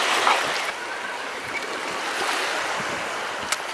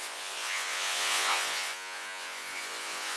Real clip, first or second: first